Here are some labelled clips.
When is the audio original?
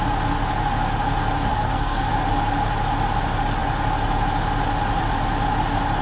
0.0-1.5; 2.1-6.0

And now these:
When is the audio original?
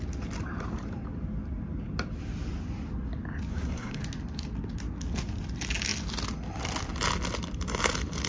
0.0-3.5; 4.0-8.3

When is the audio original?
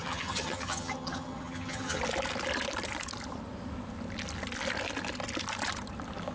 2.0-6.3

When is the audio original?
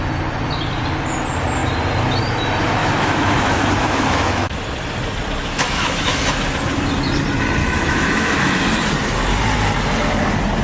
0.0-2.8; 4.6-5.4; 6.2-7.6; 8.6-10.6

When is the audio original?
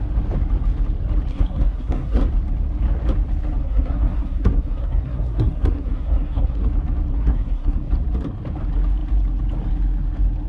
0.0-1.3; 2.2-3.6; 6.6-7.1; 7.9-10.5